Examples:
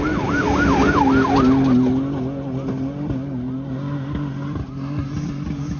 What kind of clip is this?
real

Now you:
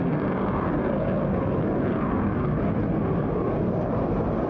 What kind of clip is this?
real